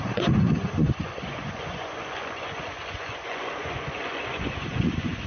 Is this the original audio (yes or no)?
no